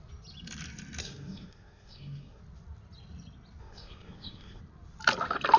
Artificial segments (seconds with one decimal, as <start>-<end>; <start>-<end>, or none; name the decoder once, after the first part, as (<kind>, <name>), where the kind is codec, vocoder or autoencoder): 1.0-2.4 (codec, SNAC); 3.6-4.6

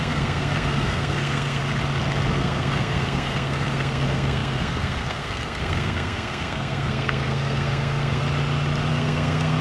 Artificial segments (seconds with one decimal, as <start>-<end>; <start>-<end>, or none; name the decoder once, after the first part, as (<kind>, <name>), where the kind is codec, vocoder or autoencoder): 0.0-1.6 (codec, SNAC); 2.3-8.2; 8.9-9.6